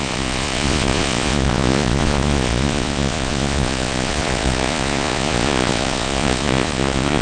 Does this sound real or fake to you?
fake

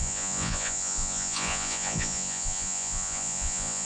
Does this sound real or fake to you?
fake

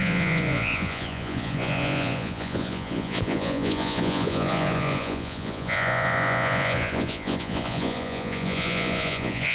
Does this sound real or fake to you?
fake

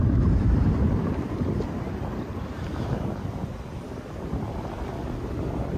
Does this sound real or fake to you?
real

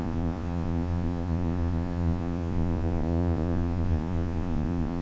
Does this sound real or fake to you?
fake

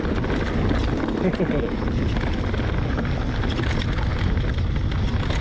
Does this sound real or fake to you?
real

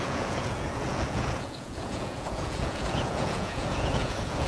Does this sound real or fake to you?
fake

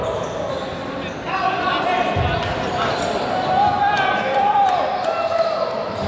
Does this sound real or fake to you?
real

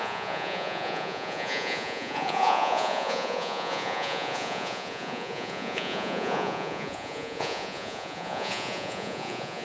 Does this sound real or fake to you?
fake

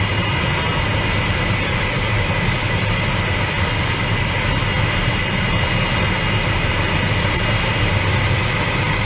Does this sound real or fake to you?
real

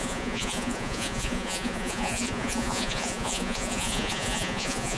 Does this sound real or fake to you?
fake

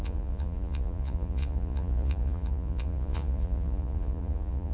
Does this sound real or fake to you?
fake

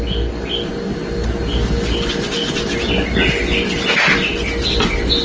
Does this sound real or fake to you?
real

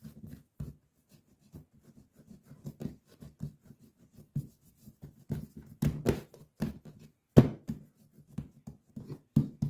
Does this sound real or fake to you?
real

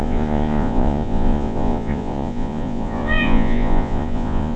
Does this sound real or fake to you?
fake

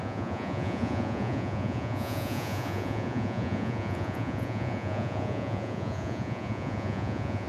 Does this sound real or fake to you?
fake